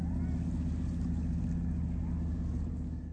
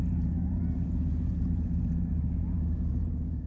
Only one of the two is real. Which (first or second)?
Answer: first